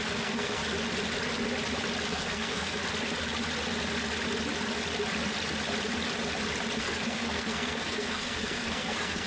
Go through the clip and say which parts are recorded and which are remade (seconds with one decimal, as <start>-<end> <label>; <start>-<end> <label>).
0.0-0.6 remade; 0.6-2.1 recorded; 2.1-2.8 remade; 2.8-6.8 recorded; 6.8-9.3 remade